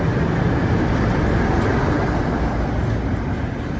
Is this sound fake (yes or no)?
no